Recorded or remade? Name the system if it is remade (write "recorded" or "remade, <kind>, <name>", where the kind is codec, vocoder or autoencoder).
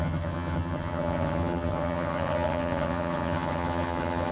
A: remade, vocoder, HiFi-GAN